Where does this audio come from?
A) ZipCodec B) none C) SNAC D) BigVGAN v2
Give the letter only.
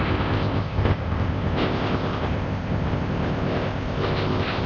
A